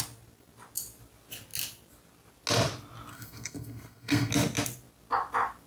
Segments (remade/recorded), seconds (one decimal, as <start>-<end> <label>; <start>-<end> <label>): 0.0-3.1 recorded; 3.1-4.3 remade; 4.3-5.7 recorded